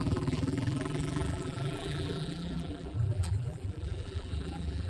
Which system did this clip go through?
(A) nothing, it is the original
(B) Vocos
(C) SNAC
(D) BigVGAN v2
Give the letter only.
D